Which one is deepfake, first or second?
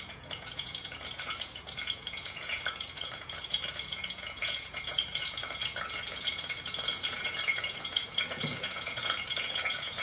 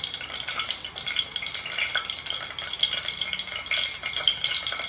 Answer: first